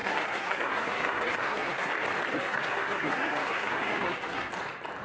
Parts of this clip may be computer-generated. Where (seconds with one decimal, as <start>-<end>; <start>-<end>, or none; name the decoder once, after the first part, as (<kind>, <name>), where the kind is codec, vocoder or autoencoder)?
0.0-1.9 (codec, SNAC); 2.3-4.5